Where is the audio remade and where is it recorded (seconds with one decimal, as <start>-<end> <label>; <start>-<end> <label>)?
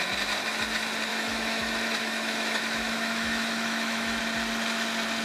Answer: 0.0-1.1 recorded; 1.1-4.2 remade; 4.2-5.2 recorded